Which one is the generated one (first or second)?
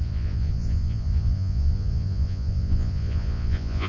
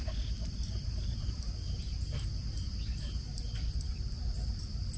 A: first